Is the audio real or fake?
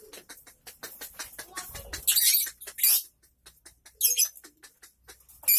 real